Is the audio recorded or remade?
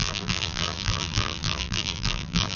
remade